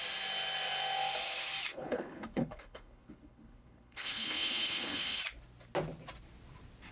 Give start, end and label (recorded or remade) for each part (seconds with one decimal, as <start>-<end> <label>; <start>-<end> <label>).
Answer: 0.0-1.7 recorded; 1.7-5.2 remade; 5.2-6.9 recorded